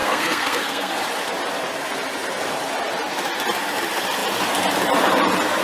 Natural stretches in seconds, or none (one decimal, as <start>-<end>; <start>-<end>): 0.9-5.6